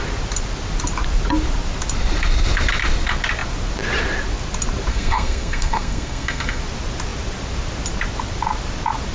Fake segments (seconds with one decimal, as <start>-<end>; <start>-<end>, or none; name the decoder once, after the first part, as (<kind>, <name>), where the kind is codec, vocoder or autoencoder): 4.9-6.6 (codec, SNAC)